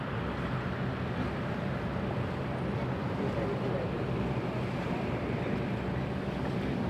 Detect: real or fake fake